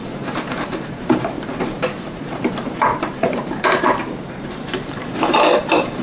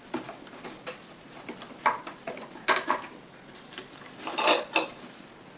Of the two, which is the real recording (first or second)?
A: second